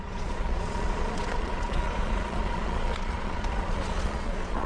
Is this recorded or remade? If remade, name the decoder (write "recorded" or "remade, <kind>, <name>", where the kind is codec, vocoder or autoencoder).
remade, vocoder, Vocos